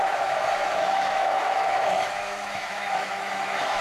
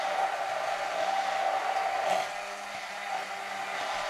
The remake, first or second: first